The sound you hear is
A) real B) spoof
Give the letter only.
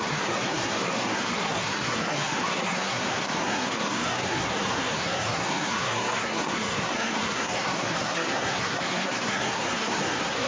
B